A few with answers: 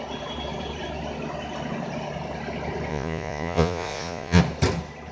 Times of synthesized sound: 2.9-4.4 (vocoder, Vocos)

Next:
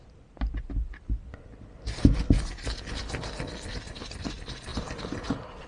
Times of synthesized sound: none

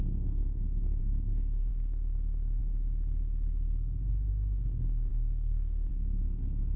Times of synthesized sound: 0.0-2.6 (codec, SNAC); 4.3-6.8

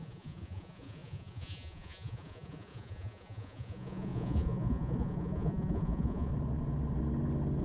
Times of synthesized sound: 0.0-6.3 (vocoder, Vocos)

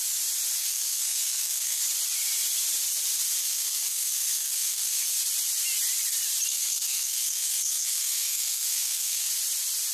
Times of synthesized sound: 0.6-1.8 (codec, SNAC); 3.4-5.2; 6.5-9.3